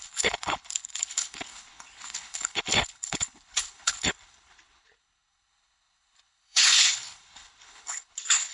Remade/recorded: remade